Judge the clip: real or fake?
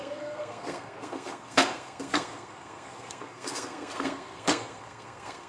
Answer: fake